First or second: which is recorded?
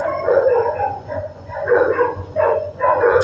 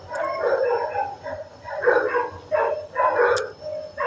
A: second